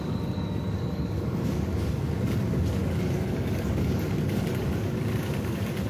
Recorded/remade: remade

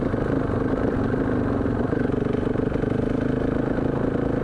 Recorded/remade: recorded